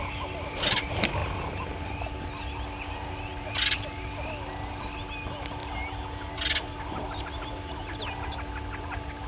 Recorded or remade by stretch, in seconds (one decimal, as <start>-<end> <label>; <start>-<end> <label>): 0.0-9.3 recorded